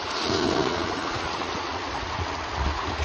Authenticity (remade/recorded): remade